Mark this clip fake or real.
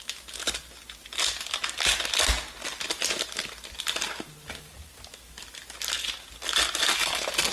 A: real